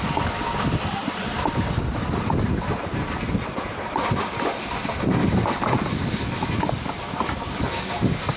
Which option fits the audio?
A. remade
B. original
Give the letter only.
B